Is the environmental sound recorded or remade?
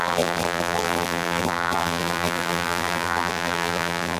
remade